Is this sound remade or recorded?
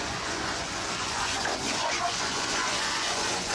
remade